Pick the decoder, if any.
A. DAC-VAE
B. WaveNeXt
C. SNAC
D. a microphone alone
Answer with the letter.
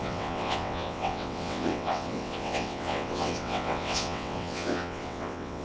B